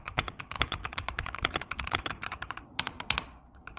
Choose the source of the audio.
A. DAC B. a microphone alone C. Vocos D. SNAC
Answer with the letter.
C